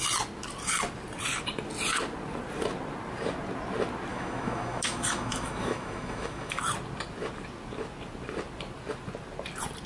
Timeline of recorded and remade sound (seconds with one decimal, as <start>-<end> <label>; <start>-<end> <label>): 0.0-4.1 recorded; 4.1-6.6 remade; 6.6-9.9 recorded